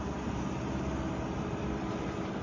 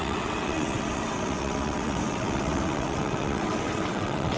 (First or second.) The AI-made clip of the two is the second